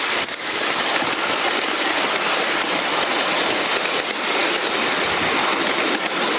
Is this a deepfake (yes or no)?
no